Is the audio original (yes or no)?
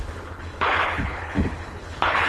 no